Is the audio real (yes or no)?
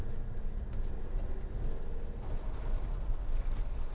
yes